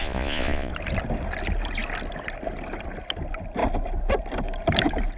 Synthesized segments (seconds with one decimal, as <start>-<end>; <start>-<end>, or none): 0.0-0.7